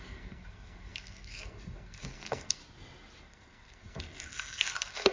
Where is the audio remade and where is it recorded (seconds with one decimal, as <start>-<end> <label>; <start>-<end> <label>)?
0.0-2.6 remade; 2.6-3.2 recorded; 3.2-5.1 remade